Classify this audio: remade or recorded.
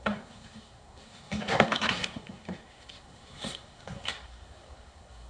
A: remade